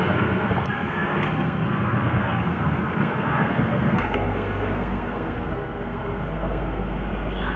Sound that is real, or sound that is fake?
fake